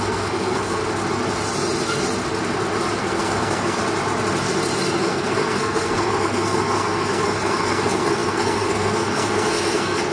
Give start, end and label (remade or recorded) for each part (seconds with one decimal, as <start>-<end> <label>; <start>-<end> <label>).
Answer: 0.0-0.8 remade; 0.8-3.0 recorded; 3.0-3.8 remade; 3.8-5.0 recorded; 5.0-10.1 remade